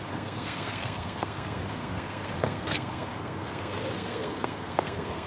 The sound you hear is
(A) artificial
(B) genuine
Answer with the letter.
A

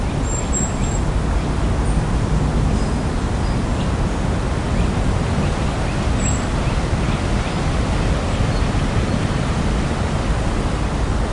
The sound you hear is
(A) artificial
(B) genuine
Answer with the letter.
B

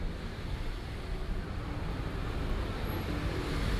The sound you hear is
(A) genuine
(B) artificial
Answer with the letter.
A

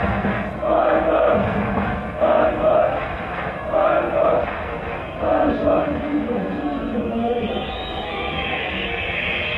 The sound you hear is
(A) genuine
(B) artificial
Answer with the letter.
B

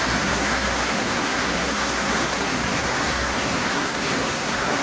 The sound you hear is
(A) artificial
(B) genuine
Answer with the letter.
A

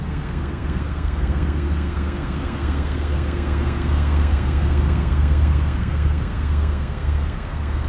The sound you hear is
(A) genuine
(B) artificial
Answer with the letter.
B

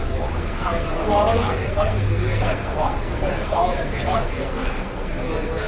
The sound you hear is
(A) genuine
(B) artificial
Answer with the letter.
B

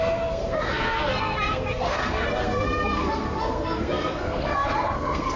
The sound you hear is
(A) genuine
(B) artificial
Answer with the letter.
B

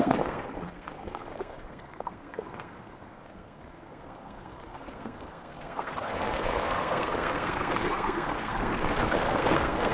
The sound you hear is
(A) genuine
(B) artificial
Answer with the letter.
B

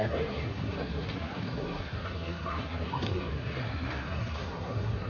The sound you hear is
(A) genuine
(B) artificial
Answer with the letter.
B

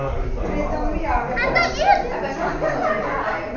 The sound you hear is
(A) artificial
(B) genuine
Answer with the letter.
B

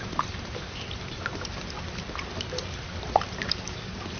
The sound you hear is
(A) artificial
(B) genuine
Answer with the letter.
B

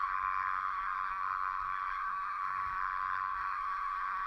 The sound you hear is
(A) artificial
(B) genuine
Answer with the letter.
A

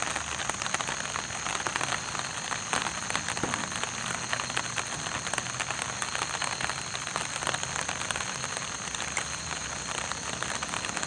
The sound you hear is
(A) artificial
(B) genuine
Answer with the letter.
B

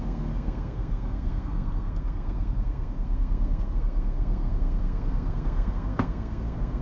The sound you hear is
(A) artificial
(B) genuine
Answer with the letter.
A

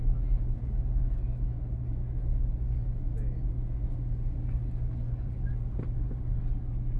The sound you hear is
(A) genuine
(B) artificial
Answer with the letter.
A